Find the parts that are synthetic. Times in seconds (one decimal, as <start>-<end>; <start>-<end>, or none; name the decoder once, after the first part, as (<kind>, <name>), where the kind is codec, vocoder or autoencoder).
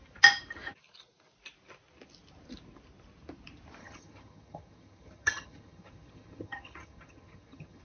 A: 3.8-7.8 (vocoder, HiFi-GAN)